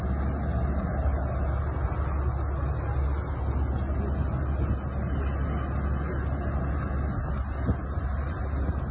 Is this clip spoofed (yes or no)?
no